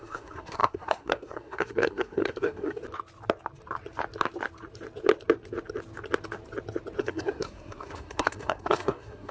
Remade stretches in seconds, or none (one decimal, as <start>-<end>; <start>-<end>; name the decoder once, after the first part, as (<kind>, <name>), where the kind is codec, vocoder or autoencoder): 0.0-2.8 (codec, SNAC); 7.0-9.3